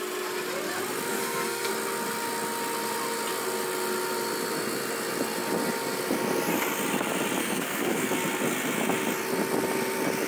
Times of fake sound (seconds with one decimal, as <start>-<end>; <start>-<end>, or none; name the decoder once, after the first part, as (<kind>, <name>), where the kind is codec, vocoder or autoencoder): 1.1-1.7 (codec, SNAC); 7.4-8.1